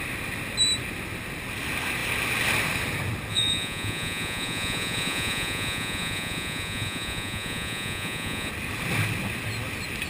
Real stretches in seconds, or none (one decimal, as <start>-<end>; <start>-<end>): 0.0-3.3; 8.5-10.1